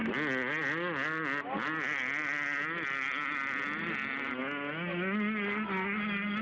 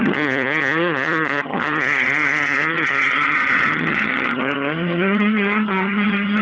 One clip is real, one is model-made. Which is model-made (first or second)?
second